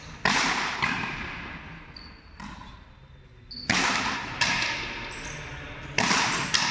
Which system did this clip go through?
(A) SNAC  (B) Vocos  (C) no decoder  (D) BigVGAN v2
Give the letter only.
C